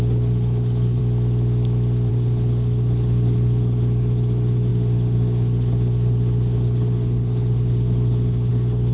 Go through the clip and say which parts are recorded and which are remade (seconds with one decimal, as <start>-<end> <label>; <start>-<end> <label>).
0.0-1.0 remade; 1.0-2.1 recorded; 2.1-8.9 remade